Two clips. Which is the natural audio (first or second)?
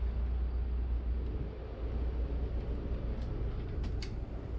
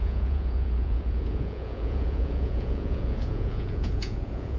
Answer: first